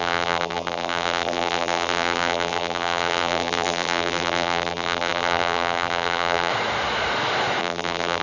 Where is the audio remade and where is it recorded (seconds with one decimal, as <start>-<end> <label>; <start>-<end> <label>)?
0.0-6.5 remade; 6.5-7.6 recorded; 7.6-8.2 remade

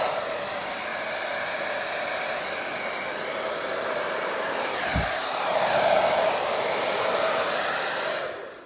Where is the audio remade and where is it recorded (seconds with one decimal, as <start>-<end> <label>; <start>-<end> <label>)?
0.0-0.9 remade; 0.9-3.3 recorded; 3.3-8.7 remade